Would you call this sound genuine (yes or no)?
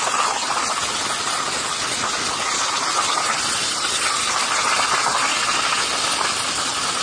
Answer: yes